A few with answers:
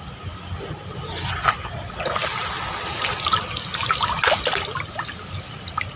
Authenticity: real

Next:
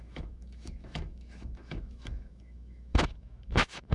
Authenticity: fake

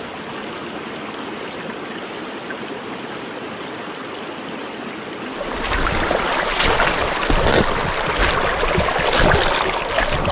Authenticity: real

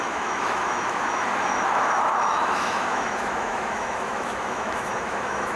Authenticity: fake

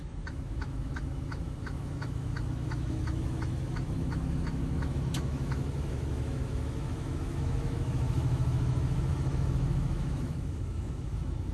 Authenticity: fake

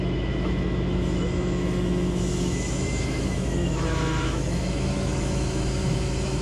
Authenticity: fake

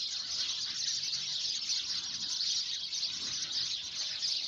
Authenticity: real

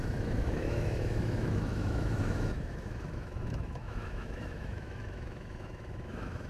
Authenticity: fake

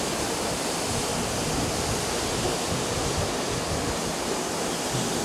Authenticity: real